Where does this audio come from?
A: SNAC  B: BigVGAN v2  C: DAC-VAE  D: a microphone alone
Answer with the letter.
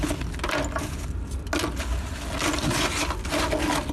D